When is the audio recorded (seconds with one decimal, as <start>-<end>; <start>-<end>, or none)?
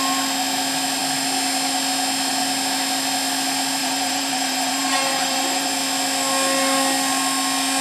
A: 0.0-3.8; 5.7-7.8